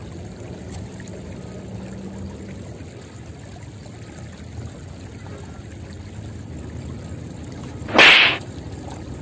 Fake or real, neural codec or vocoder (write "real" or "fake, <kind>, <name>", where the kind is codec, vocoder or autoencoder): real